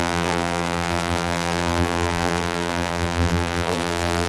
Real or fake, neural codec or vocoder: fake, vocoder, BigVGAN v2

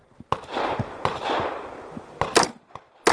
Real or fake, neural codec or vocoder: real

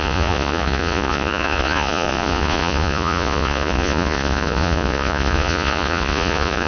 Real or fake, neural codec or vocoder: fake, vocoder, Vocos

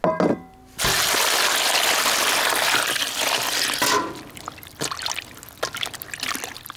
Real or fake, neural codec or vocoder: real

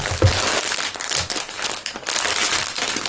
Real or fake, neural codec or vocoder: real